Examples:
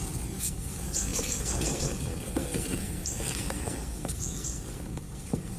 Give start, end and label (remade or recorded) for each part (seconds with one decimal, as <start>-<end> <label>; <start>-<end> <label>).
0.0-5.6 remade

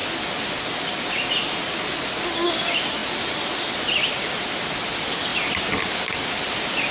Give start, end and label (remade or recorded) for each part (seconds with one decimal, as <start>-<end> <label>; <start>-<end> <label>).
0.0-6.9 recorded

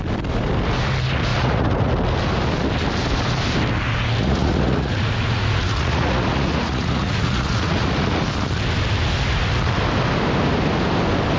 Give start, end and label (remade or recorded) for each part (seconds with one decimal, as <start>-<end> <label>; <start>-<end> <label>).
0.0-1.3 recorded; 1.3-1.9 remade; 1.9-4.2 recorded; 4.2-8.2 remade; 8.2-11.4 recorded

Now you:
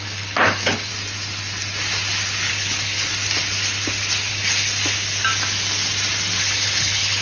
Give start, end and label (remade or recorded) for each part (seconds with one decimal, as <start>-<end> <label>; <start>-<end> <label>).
0.0-0.9 remade; 0.9-2.5 recorded; 2.5-3.1 remade; 3.1-4.3 recorded; 4.3-4.7 remade; 4.7-6.4 recorded; 6.4-7.2 remade

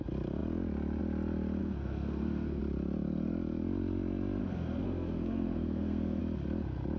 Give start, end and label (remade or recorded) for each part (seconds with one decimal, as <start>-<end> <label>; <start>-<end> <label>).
0.0-1.6 recorded; 1.6-2.6 remade; 2.6-4.4 recorded; 4.4-6.2 remade; 6.2-7.0 recorded

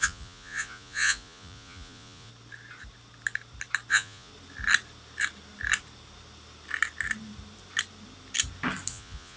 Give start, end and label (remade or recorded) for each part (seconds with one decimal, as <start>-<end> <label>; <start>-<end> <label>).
0.0-2.3 remade; 2.3-3.9 recorded; 3.9-4.3 remade; 4.3-8.9 recorded; 8.9-9.4 remade

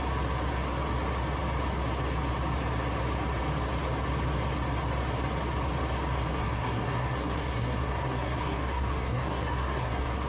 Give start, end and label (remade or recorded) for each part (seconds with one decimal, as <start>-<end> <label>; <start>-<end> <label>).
0.0-6.3 recorded; 6.3-10.3 remade

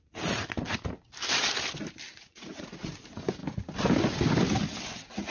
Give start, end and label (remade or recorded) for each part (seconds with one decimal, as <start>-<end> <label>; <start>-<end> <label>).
0.0-2.1 recorded; 2.1-2.9 remade; 2.9-5.3 recorded